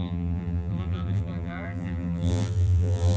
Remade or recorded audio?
remade